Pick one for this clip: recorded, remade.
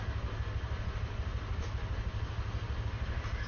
recorded